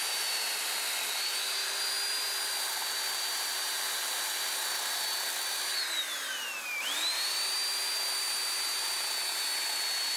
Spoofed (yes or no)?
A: no